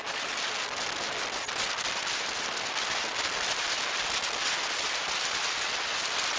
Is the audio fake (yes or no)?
no